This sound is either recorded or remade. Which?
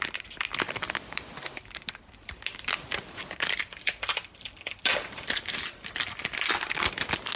recorded